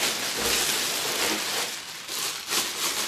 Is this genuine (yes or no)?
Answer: yes